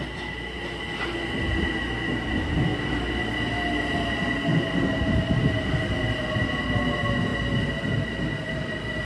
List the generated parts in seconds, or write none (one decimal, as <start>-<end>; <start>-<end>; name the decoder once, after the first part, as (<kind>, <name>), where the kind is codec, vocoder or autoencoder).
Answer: none